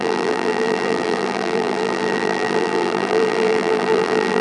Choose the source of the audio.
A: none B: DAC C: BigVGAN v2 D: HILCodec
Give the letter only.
C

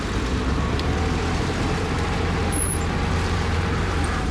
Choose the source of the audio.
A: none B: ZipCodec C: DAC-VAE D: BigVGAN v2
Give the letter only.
D